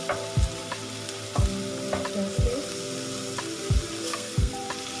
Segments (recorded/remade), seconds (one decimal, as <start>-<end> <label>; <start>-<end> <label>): 0.0-4.0 recorded; 4.0-4.5 remade; 4.5-5.0 recorded